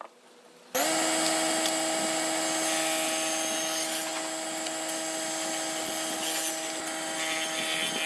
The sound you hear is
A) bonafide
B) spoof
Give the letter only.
A